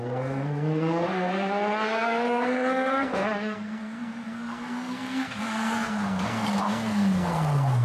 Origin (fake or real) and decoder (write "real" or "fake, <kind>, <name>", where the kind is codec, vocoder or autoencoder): fake, codec, SNAC